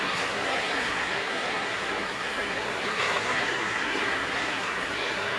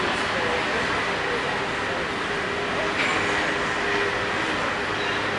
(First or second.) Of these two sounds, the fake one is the first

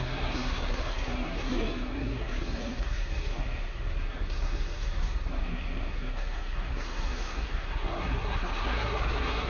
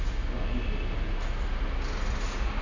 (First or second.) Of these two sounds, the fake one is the first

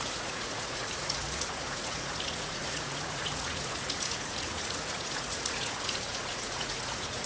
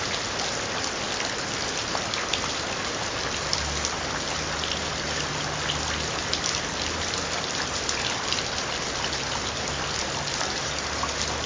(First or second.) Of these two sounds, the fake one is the first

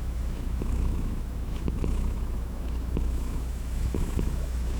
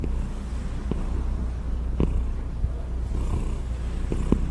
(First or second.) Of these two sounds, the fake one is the first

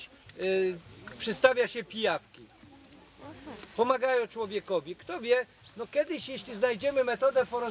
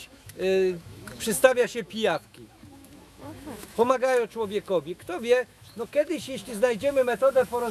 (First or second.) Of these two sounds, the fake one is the second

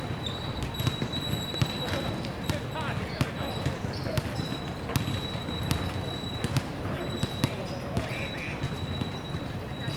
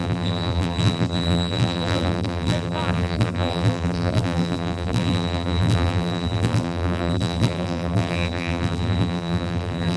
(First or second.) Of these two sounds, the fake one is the second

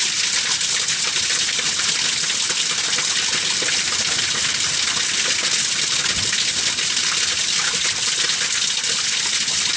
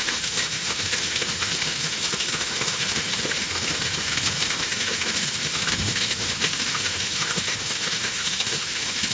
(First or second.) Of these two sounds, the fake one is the second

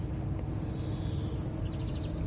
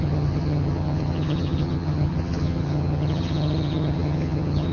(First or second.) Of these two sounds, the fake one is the second